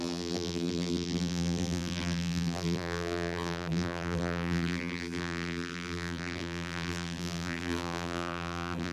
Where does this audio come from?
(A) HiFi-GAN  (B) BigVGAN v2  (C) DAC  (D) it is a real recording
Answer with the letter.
B